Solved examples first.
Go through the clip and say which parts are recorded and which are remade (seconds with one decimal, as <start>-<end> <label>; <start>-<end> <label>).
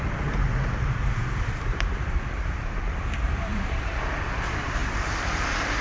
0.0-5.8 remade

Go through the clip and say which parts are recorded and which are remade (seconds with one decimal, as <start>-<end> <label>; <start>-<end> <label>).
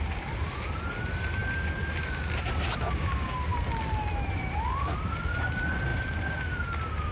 0.0-3.5 recorded; 3.5-4.7 remade; 4.7-7.1 recorded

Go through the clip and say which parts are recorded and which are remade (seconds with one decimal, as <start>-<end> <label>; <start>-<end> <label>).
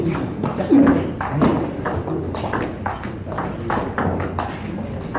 0.0-5.2 recorded